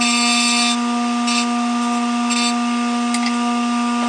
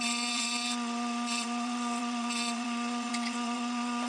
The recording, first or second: first